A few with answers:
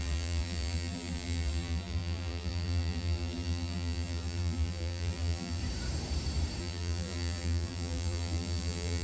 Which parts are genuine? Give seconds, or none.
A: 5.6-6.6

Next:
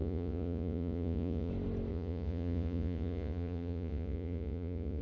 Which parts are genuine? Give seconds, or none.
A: 1.5-1.9

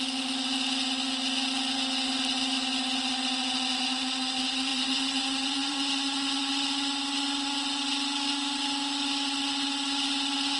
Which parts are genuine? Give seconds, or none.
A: 0.0-4.7; 5.9-10.6

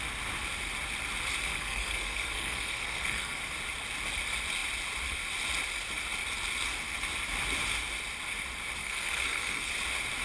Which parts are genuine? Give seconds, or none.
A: 0.0-1.5; 3.4-8.8; 9.7-10.2

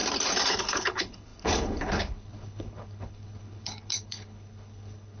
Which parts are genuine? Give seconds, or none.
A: 0.0-0.6

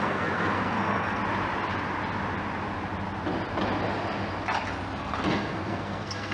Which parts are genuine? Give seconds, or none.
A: 1.2-5.0

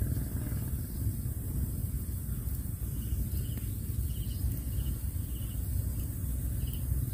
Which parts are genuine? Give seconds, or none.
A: 0.0-7.1

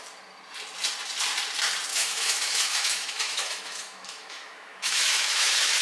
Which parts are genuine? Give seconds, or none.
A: 0.0-1.9